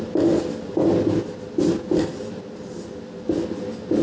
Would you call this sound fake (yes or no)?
no